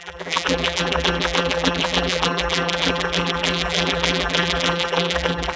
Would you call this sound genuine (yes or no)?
no